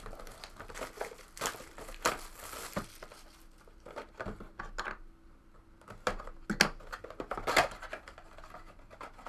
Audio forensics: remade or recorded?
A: recorded